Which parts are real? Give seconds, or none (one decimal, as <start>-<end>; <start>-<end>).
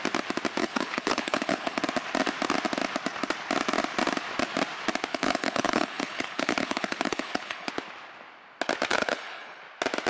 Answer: 0.0-0.6; 1.8-5.1; 7.7-8.9; 9.6-10.1